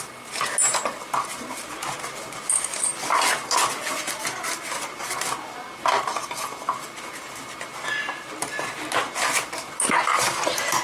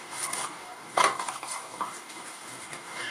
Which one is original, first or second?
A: first